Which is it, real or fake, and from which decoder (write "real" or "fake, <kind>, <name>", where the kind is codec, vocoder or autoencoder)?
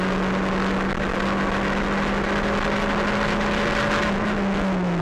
real